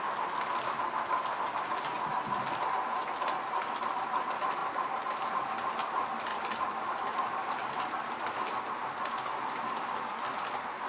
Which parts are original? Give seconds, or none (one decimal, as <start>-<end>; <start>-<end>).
0.0-4.6; 5.3-6.3; 6.8-8.8; 9.9-10.9